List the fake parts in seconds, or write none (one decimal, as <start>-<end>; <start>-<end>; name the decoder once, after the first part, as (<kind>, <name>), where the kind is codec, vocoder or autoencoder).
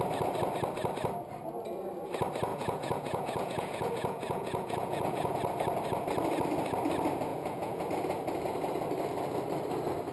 2.5-5.4 (vocoder, Vocos); 7.3-7.9